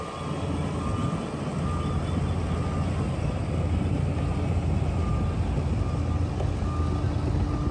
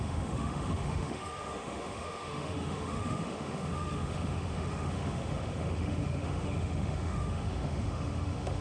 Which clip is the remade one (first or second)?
second